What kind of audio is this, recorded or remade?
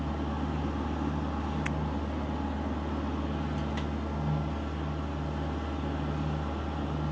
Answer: recorded